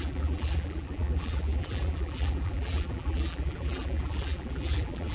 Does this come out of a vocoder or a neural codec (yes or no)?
yes